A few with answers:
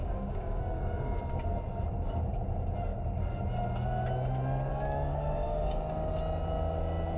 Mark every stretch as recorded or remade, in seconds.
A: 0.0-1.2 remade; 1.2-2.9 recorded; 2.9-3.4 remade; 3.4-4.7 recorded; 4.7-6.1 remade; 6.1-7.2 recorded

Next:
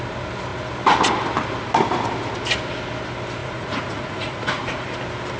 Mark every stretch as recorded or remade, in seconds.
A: 0.0-3.4 recorded; 3.4-4.9 remade; 4.9-5.4 recorded

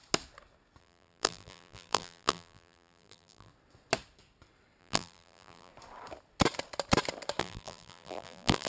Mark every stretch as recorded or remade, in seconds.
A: 0.0-0.8 recorded; 0.8-3.5 remade; 3.5-4.8 recorded; 4.8-5.7 remade; 5.7-7.4 recorded; 7.4-8.7 remade

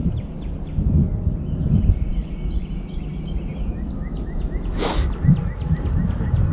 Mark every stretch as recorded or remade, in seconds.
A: 0.0-6.5 recorded

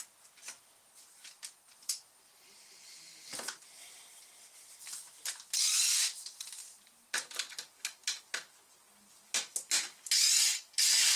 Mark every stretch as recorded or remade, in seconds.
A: 0.0-11.2 recorded

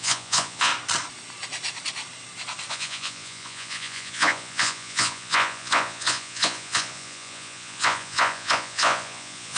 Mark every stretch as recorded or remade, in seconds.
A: 0.0-0.7 remade; 0.7-2.7 recorded; 2.7-9.6 remade